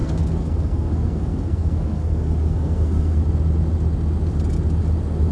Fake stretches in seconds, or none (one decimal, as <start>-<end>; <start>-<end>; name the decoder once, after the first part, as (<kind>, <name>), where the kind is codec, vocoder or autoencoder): 0.0-3.2 (codec, SNAC)